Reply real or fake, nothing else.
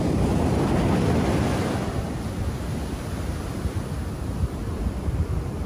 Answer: real